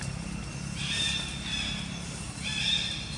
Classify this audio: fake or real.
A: real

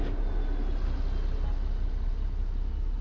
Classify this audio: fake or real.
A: real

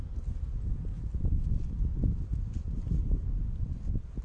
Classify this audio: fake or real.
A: real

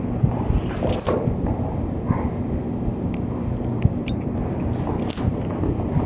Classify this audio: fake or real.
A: real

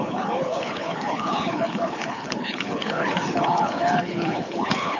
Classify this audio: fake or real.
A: fake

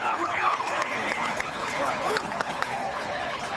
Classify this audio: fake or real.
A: fake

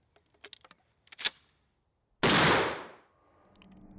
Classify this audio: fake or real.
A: real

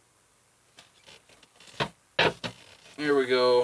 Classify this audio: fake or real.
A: real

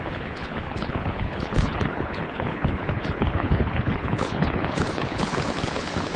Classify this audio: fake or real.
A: fake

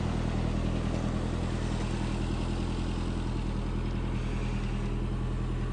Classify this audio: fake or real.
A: real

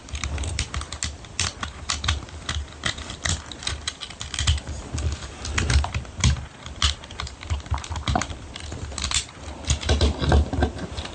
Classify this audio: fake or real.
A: real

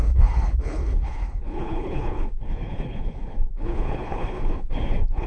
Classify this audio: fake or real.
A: fake